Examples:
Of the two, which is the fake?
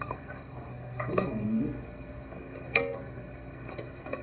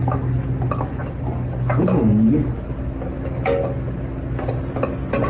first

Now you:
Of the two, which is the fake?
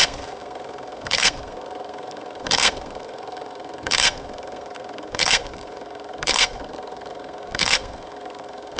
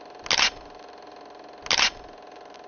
first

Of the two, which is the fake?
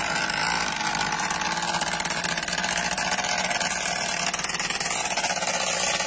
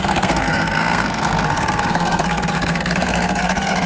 second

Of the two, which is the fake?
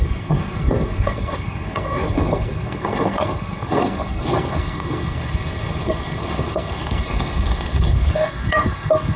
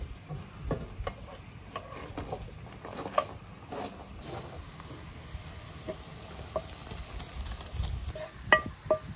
first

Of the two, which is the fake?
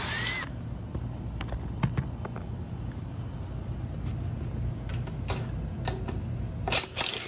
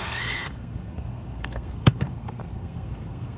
second